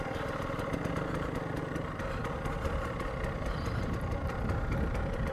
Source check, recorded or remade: recorded